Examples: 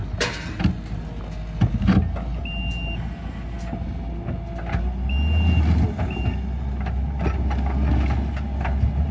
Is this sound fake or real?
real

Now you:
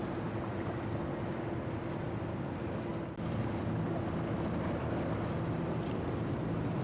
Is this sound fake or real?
real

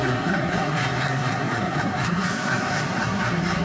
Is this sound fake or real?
fake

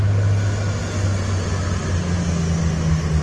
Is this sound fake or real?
real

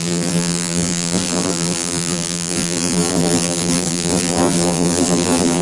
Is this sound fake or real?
fake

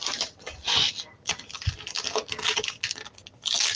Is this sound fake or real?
real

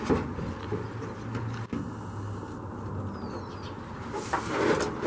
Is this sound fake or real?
real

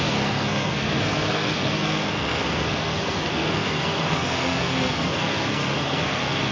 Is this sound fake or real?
fake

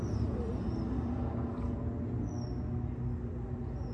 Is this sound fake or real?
real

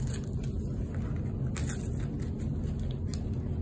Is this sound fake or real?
real